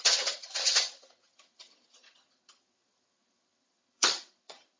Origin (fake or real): fake